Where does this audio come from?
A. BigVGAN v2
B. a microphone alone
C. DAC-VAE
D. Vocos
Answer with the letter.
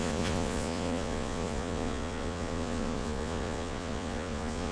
D